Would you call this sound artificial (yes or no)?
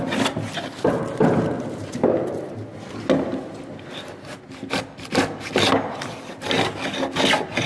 no